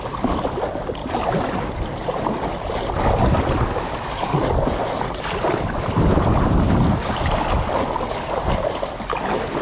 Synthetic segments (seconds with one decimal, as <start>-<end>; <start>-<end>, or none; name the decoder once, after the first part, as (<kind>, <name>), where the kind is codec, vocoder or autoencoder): none